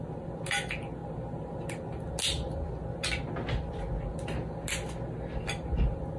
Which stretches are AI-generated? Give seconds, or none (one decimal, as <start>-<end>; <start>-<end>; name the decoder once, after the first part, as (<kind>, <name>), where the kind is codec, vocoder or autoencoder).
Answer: none